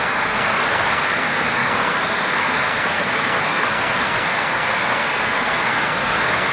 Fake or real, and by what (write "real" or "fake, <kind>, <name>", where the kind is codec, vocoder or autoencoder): fake, codec, SNAC